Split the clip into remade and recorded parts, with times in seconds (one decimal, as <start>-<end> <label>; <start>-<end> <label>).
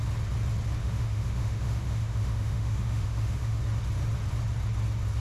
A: 0.0-0.8 recorded; 0.8-3.6 remade; 3.6-5.2 recorded